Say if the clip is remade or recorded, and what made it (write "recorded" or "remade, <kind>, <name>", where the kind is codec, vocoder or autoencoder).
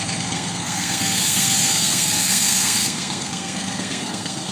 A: remade, codec, SNAC